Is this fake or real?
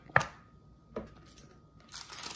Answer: real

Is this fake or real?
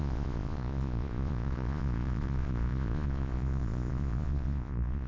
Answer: fake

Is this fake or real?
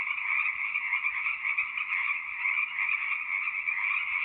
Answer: real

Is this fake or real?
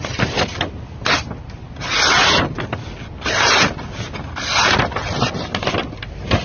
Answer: real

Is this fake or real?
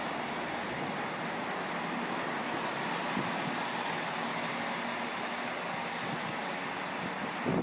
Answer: real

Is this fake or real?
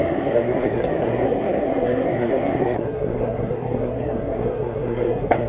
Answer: fake